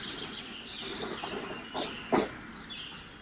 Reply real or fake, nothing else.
real